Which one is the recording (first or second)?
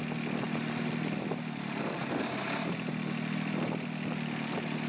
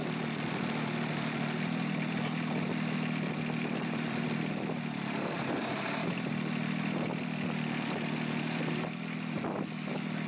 first